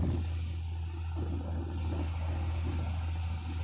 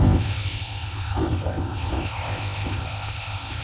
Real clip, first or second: first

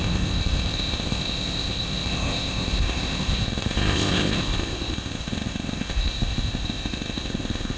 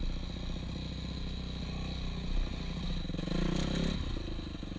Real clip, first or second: second